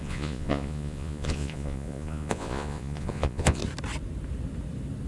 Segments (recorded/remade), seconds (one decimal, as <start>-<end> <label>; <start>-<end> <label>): 0.0-3.6 remade; 3.6-5.1 recorded